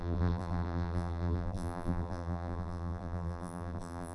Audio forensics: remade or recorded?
remade